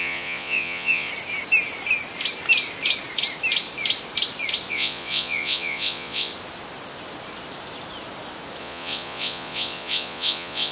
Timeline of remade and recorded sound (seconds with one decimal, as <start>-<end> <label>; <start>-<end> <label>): 0.0-1.1 remade; 1.1-4.7 recorded; 4.7-6.3 remade; 6.3-8.6 recorded; 8.6-10.7 remade

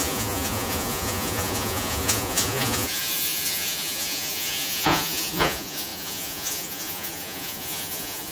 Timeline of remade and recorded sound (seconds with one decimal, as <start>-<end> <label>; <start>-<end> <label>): 0.0-8.3 remade

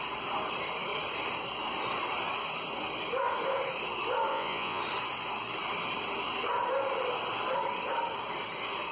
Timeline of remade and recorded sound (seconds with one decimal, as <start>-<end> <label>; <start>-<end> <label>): 0.0-4.3 recorded; 4.3-4.8 remade; 4.8-8.9 recorded

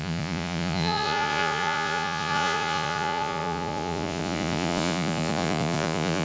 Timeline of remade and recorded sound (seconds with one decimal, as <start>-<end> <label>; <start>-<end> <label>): 0.0-6.2 remade

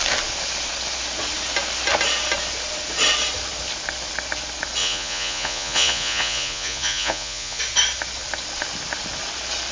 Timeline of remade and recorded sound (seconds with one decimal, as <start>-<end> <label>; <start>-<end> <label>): 0.0-4.8 recorded; 4.8-7.6 remade; 7.6-9.7 recorded

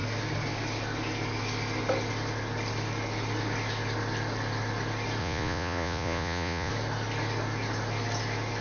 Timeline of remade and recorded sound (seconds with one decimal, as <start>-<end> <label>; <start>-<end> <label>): 0.0-5.2 recorded; 5.2-6.7 remade; 6.7-8.6 recorded

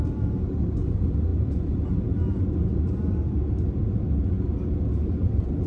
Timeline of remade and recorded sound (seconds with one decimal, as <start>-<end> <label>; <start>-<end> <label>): 0.0-5.7 recorded

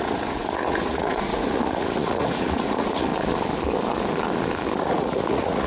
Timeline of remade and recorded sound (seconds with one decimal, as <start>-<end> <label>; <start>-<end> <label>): 0.0-3.1 remade; 3.1-4.8 recorded; 4.8-5.7 remade